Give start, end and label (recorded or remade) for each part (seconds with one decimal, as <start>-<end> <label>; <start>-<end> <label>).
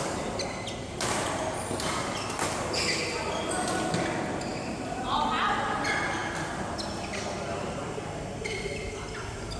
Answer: 0.0-4.5 recorded; 4.5-5.4 remade; 5.4-9.6 recorded